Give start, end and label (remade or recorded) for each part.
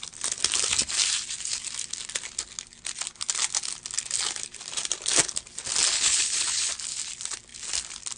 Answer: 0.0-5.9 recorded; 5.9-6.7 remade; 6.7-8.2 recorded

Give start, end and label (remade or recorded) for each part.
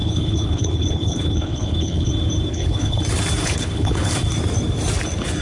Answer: 0.0-2.1 remade; 2.1-2.5 recorded; 2.5-3.0 remade; 3.0-3.4 recorded; 3.4-4.1 remade; 4.1-5.4 recorded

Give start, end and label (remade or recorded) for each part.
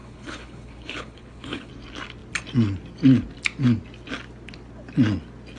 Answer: 0.0-1.7 remade; 1.7-5.6 recorded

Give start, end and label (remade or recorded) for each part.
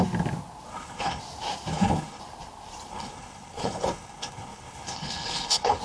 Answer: 0.0-0.7 recorded; 0.7-1.2 remade; 1.2-1.7 recorded; 1.7-2.2 remade; 2.2-2.9 recorded; 2.9-5.8 remade